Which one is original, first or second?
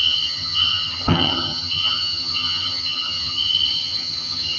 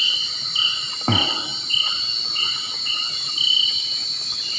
second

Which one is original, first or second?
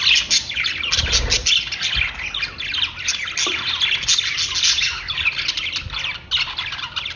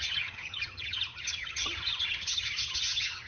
first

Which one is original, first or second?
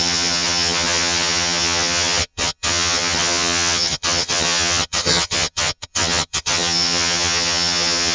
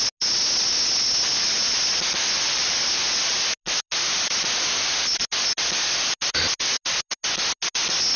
second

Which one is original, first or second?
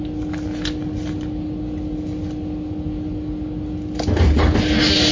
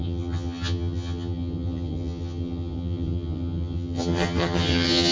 first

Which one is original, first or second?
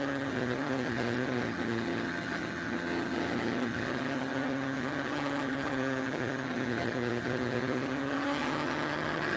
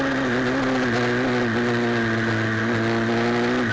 second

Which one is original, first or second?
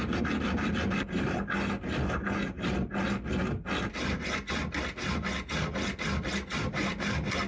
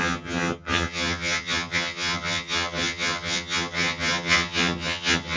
first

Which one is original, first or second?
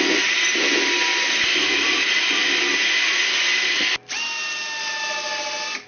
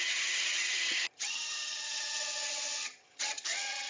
first